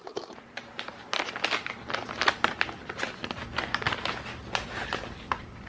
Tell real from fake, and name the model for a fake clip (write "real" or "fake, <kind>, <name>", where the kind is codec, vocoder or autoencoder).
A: real